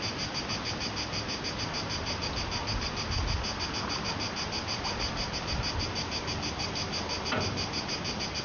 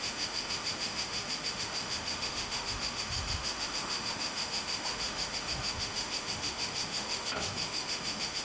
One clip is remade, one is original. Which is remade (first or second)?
second